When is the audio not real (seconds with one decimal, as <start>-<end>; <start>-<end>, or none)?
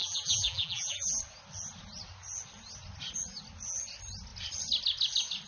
0.0-1.2